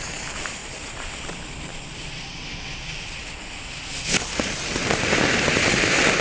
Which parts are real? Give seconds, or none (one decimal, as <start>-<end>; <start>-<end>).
2.5-4.7

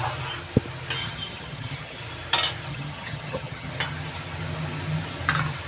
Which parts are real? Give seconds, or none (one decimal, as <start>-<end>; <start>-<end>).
0.0-1.0; 2.0-2.7; 3.7-5.7

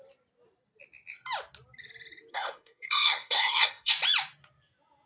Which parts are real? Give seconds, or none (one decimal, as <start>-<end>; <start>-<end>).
0.0-2.3; 3.9-5.1

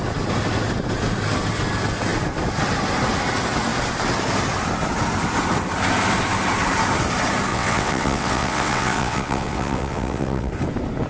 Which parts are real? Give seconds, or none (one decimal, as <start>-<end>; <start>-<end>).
0.0-7.5; 10.5-11.1

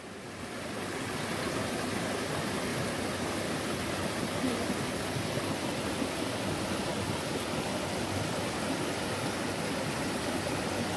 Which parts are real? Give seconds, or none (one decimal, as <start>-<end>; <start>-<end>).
0.0-11.0

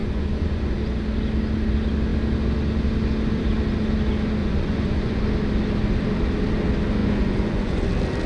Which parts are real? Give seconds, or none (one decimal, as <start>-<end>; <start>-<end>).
0.7-4.4; 5.2-7.0; 7.8-8.3